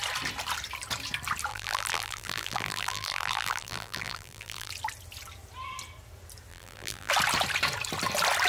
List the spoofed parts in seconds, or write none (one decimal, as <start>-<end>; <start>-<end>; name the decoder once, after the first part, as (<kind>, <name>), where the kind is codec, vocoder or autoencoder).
1.5-4.7 (vocoder, BigVGAN v2); 6.5-7.1